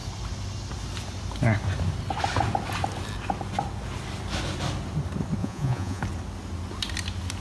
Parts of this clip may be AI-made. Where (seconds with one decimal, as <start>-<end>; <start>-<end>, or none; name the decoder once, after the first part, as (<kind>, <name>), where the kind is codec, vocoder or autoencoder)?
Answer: 5.4-6.0 (vocoder, Vocos)